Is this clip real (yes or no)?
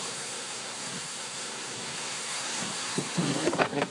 no